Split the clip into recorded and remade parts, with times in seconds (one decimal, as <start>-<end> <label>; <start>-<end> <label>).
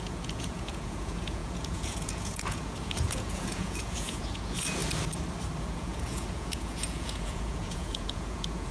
0.0-4.8 remade; 4.8-5.6 recorded; 5.6-8.7 remade